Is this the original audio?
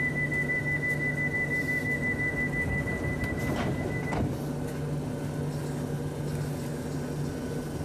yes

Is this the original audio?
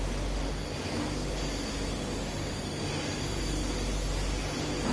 yes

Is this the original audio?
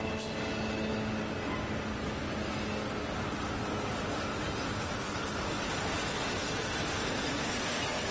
yes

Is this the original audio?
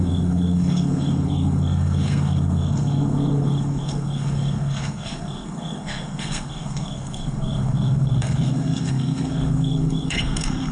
no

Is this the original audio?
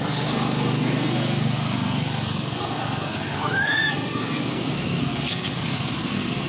no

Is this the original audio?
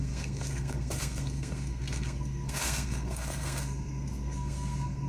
no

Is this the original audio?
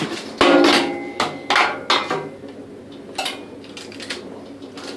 yes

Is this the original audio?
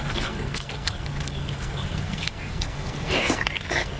no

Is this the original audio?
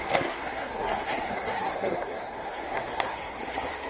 no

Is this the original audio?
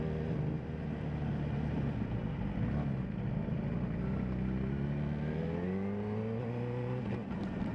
yes